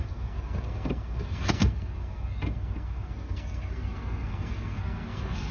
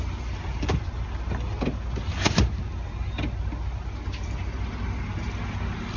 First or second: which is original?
second